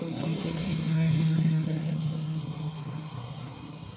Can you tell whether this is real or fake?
fake